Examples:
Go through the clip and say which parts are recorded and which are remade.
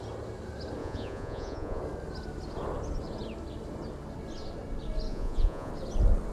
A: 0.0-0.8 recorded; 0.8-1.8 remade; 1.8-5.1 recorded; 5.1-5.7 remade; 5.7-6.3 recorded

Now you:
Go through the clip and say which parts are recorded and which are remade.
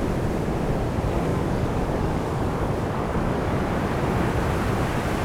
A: 0.0-1.3 recorded; 1.3-3.6 remade; 3.6-5.2 recorded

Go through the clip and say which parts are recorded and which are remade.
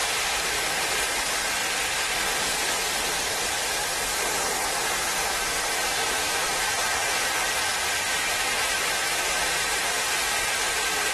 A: 0.0-5.8 recorded; 5.8-6.5 remade; 6.5-8.2 recorded; 8.2-9.4 remade; 9.4-11.1 recorded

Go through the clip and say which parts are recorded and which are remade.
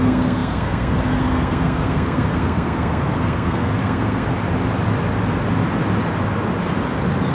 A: 0.0-4.3 remade; 4.3-7.3 recorded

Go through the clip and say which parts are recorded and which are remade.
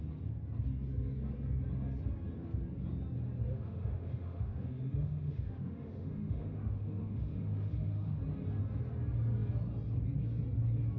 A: 0.0-3.5 recorded; 3.5-8.2 remade; 8.2-11.0 recorded